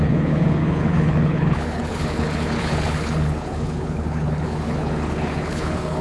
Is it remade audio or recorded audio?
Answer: remade